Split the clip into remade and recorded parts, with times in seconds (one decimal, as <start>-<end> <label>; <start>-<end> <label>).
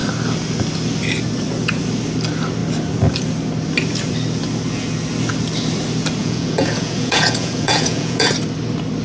0.0-6.2 recorded; 6.2-8.3 remade; 8.3-9.0 recorded